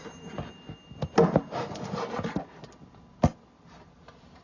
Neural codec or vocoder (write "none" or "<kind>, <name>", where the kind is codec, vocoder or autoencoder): none